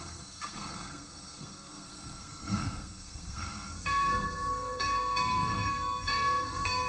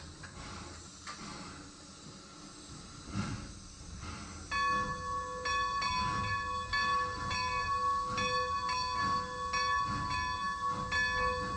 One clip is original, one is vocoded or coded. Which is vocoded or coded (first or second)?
first